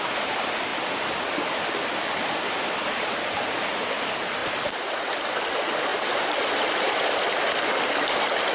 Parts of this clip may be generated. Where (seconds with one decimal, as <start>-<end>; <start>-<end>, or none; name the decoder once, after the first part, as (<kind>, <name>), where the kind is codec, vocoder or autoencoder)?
4.4-5.3 (vocoder, BigVGAN v2); 5.9-7.1